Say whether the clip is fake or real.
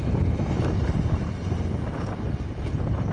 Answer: real